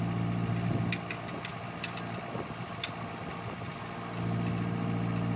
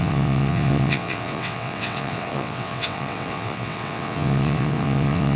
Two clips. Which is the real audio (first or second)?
first